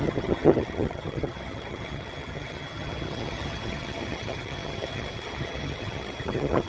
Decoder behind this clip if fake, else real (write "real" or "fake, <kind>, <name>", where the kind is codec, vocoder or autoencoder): fake, vocoder, HiFi-GAN